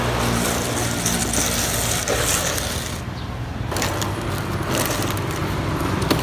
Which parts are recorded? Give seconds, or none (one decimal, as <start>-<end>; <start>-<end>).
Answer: 0.0-6.2